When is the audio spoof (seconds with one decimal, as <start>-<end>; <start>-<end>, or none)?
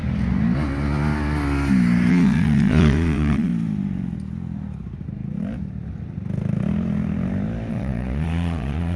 2.1-3.5; 7.7-9.0